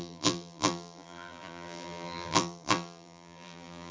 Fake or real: fake